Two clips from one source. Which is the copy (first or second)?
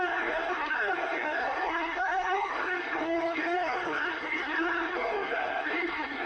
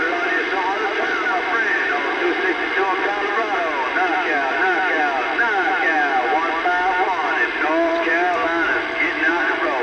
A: first